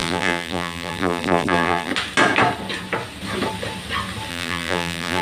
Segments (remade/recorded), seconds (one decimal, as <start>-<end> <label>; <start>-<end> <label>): 0.0-1.9 remade; 1.9-4.3 recorded; 4.3-5.2 remade